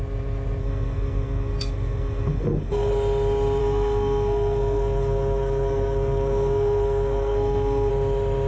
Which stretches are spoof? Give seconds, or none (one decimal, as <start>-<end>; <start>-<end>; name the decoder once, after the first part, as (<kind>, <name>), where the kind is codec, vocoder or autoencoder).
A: 0.6-2.9 (codec, SNAC); 3.6-7.9